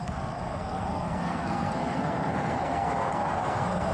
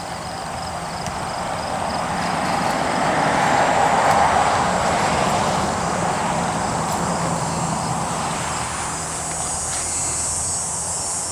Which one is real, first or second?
second